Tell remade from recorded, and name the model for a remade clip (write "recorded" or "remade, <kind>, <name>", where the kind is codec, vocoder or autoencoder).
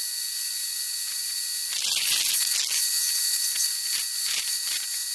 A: recorded